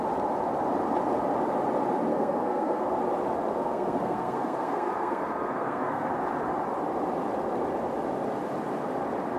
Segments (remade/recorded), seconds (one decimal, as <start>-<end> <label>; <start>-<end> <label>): 0.0-2.1 recorded; 2.1-3.0 remade; 3.0-3.5 recorded; 3.5-6.1 remade; 6.1-9.4 recorded